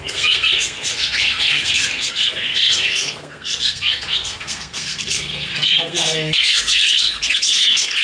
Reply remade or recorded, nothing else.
remade